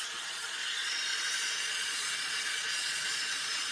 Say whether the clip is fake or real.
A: fake